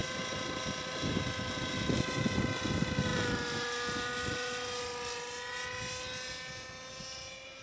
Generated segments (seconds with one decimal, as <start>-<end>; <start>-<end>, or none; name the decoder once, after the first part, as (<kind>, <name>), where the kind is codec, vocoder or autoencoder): none